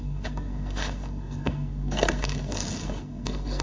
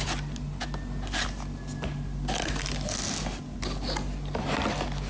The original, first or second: second